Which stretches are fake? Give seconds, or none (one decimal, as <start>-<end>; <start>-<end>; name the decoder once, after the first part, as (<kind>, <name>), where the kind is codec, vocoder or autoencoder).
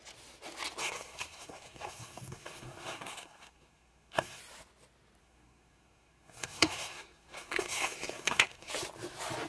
0.8-4.4 (codec, SNAC); 5.2-8.7